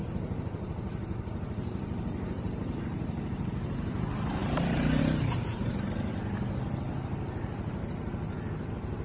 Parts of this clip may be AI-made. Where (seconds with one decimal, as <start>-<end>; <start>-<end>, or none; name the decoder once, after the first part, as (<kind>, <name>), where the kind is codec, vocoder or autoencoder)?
0.0-6.1 (vocoder, BigVGAN v2); 8.5-9.0